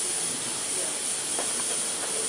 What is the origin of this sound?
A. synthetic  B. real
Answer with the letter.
B